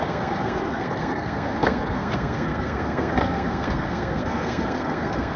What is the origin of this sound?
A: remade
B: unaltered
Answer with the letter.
A